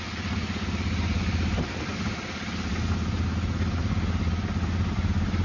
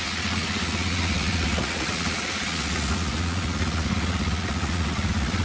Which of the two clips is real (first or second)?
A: first